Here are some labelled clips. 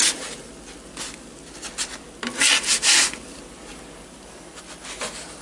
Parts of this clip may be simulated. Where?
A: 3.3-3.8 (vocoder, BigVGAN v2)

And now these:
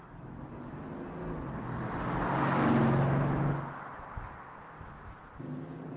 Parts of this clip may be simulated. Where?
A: 2.8-3.4 (autoencoder, DAC-VAE)

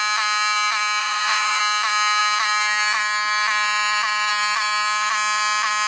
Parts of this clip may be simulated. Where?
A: 1.0-1.6 (vocoder, Vocos)

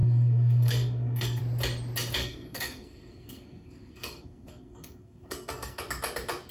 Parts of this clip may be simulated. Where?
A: 0.0-1.4 (codec, SNAC); 2.2-5.8

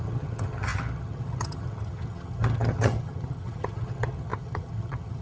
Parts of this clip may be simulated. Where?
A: 0.0-5.2 (vocoder, HiFi-GAN)

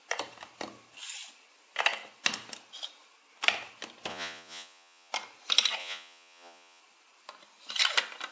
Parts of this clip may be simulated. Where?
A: 4.1-5.1 (vocoder, Vocos); 5.8-6.8

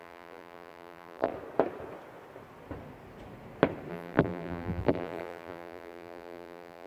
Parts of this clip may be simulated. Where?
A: 0.0-1.3 (vocoder, BigVGAN v2); 3.9-6.9

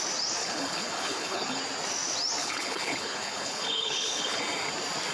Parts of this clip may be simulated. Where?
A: 0.4-1.6 (codec, HILCodec); 2.4-4.4